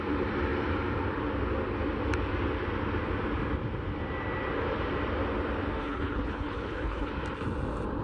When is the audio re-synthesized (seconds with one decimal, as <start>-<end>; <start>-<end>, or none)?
5.8-7.1